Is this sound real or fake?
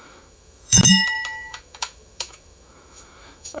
fake